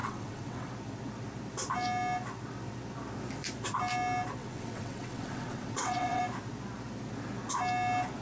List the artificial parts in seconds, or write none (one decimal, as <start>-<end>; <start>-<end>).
0.0-0.7; 4.4-6.2